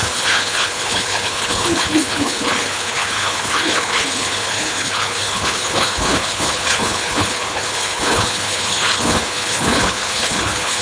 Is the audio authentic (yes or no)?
no